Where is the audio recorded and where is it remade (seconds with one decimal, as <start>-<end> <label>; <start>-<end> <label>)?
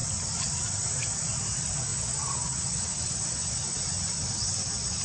0.0-1.9 recorded; 1.9-5.0 remade